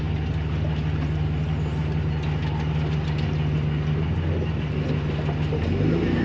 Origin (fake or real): real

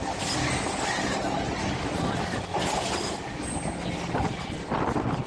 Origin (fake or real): real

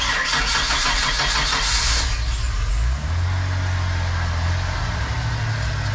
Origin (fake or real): real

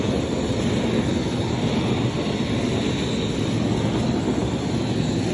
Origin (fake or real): real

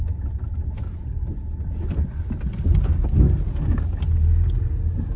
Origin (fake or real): real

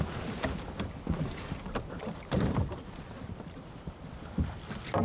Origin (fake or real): real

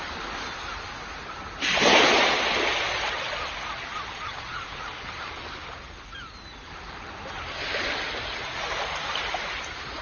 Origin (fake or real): real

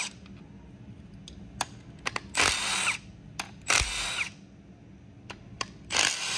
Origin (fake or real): real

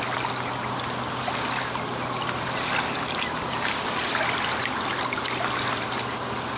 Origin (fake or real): real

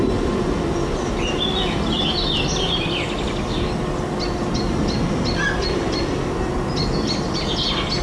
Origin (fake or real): real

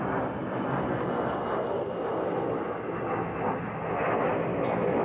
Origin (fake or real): real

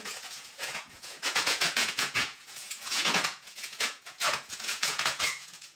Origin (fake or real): fake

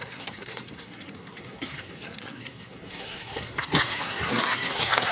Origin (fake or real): fake